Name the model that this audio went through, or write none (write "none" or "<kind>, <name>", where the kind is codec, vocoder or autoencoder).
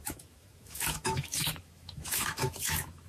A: autoencoder, DAC-VAE